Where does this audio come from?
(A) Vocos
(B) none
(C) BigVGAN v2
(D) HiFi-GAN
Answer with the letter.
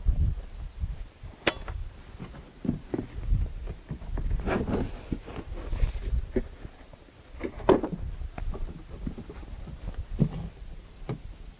B